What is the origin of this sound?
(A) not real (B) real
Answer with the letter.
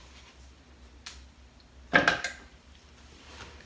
B